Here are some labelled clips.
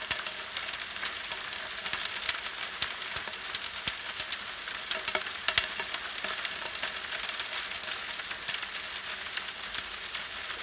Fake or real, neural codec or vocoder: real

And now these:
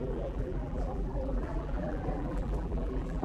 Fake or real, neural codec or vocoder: fake, vocoder, BigVGAN v2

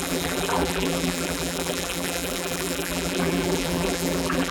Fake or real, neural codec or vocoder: fake, vocoder, BigVGAN v2